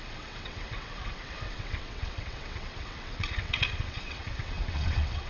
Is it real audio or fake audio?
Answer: fake